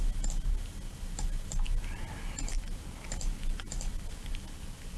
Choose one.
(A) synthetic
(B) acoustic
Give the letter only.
B